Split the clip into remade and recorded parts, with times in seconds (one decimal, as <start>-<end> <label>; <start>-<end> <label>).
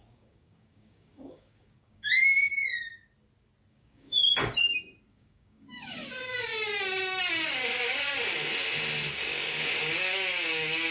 0.0-2.5 remade; 2.5-3.7 recorded; 3.7-4.6 remade; 4.6-5.1 recorded; 5.1-6.5 remade; 6.5-7.2 recorded; 7.2-8.5 remade; 8.5-9.1 recorded; 9.1-10.9 remade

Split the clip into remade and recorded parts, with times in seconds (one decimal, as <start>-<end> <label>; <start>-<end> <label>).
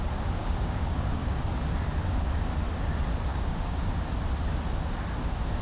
0.0-0.4 recorded; 0.4-1.3 remade; 1.3-3.3 recorded; 3.3-4.1 remade; 4.1-5.6 recorded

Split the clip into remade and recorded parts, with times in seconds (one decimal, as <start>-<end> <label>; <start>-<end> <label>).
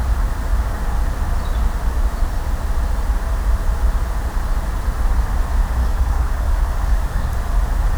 0.0-5.8 recorded; 5.8-7.3 remade; 7.3-8.0 recorded